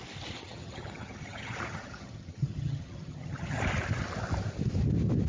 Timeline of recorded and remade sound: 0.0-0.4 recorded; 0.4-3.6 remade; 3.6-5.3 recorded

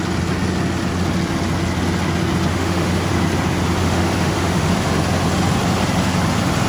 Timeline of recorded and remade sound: 0.0-2.5 recorded; 2.5-3.1 remade; 3.1-3.8 recorded; 3.8-4.7 remade; 4.7-6.7 recorded